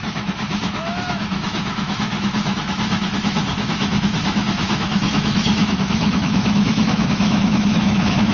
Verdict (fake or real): fake